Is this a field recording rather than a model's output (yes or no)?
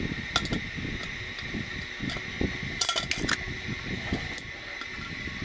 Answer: yes